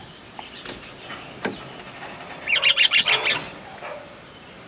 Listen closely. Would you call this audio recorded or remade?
recorded